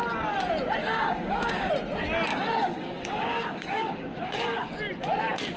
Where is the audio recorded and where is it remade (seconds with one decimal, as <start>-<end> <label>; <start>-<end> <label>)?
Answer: 0.0-0.8 recorded; 0.8-1.7 remade; 1.7-2.3 recorded; 2.3-4.7 remade; 4.7-5.6 recorded